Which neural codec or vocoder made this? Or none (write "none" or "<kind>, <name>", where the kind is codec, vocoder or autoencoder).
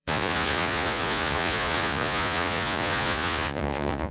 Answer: vocoder, Vocos